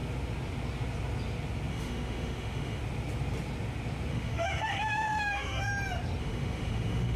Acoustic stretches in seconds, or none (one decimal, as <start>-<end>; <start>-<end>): 0.0-1.7; 2.8-4.1; 5.7-6.2